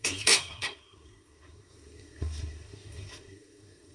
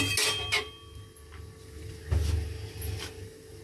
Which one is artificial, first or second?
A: first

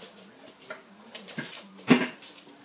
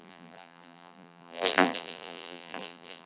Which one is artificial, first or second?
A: second